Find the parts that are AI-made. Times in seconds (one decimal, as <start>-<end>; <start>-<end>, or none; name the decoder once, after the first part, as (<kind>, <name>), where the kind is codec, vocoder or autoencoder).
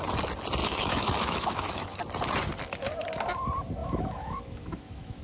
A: 0.6-2.0 (autoencoder, DAC-VAE); 3.8-5.2